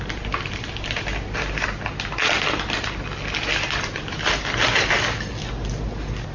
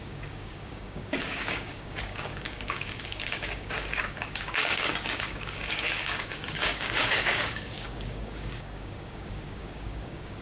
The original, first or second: first